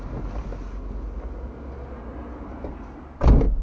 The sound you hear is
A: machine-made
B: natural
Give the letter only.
B